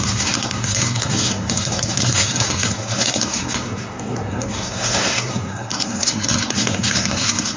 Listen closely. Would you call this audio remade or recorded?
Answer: remade